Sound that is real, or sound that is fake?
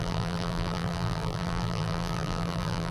fake